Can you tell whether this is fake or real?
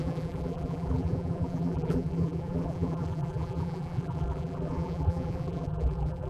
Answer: fake